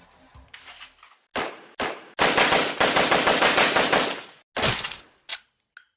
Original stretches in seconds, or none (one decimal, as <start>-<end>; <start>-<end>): 0.0-6.0